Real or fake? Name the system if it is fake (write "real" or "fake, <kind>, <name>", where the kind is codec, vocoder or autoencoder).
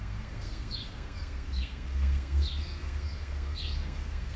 fake, codec, SNAC